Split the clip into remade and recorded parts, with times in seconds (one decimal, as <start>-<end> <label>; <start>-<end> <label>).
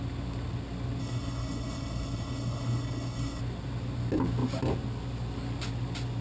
0.0-1.0 recorded; 1.0-3.4 remade; 3.4-6.2 recorded